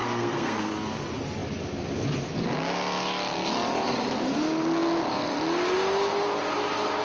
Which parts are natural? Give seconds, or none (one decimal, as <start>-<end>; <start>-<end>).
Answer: 0.7-7.0